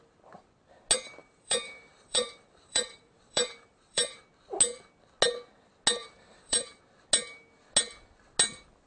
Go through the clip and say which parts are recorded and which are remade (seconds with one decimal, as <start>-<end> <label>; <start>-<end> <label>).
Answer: 0.0-1.2 recorded; 1.2-4.2 remade; 4.2-6.0 recorded; 6.0-6.8 remade; 6.8-8.9 recorded